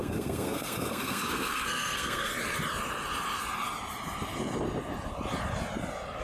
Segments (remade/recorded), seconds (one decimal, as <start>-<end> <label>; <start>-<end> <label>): 0.0-2.3 remade; 2.3-6.2 recorded